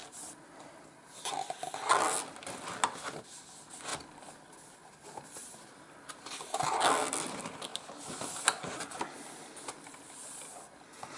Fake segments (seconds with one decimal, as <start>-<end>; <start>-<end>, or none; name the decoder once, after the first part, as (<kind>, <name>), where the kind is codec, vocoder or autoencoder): none